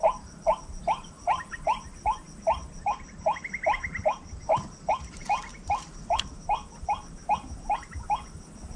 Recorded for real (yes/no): yes